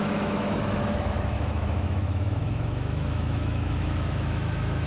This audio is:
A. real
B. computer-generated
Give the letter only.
B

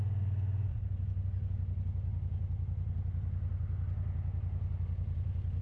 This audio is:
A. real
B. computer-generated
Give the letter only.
A